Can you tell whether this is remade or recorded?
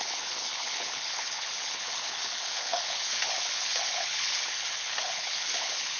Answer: remade